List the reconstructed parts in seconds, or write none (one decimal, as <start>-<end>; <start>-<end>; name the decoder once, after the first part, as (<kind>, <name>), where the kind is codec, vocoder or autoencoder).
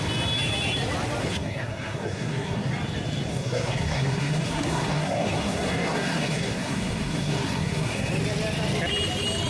1.2-2.7 (codec, SNAC); 3.3-8.1